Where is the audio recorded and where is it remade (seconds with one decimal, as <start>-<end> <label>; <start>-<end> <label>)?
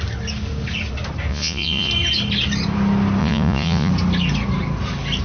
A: 0.0-1.3 recorded; 1.3-1.9 remade; 1.9-3.2 recorded; 3.2-3.9 remade; 3.9-5.2 recorded